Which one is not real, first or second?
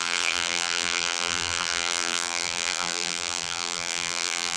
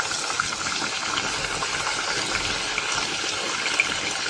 first